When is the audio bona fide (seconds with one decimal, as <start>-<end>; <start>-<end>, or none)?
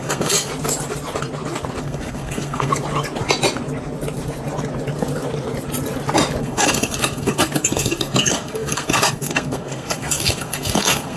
0.5-1.8; 2.7-6.4